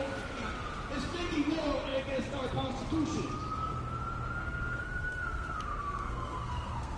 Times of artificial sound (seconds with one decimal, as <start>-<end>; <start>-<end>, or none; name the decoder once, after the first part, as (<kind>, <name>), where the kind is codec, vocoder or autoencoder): 4.4-7.0 (codec, SNAC)